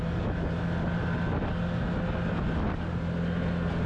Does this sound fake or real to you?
real